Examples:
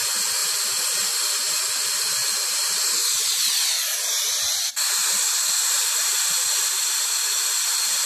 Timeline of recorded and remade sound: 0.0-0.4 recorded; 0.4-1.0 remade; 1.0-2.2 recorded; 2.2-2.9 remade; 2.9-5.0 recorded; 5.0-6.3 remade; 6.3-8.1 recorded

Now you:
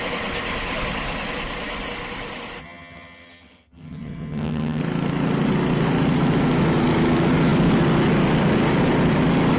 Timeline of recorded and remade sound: 0.0-2.6 recorded; 2.6-4.8 remade; 4.8-9.6 recorded

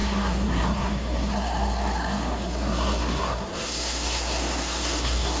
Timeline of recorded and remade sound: 0.0-5.4 remade

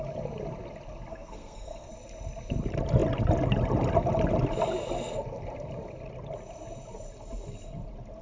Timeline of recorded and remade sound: 0.0-1.1 recorded; 1.1-1.9 remade; 1.9-8.2 recorded

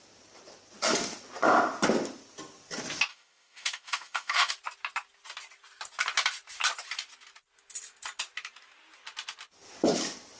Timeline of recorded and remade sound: 0.0-3.1 recorded; 3.1-4.5 remade; 4.5-10.4 recorded

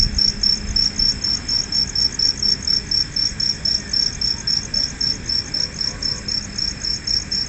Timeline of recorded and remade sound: 0.0-7.5 recorded